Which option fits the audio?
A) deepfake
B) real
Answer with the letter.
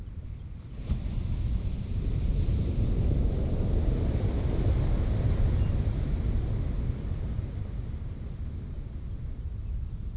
B